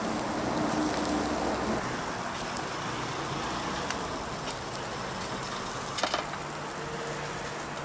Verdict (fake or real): real